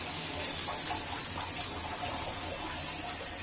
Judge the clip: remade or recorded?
recorded